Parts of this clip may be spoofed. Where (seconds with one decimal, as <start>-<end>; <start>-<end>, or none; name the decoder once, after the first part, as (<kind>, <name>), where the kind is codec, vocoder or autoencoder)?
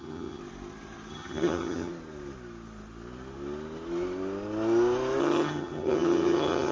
0.0-0.4 (vocoder, HiFi-GAN); 1.1-1.9; 5.2-6.7